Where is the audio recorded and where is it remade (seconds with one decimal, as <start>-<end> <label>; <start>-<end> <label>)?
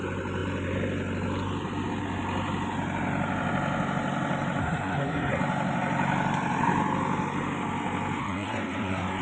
0.0-4.6 recorded; 4.6-5.4 remade; 5.4-8.2 recorded; 8.2-9.2 remade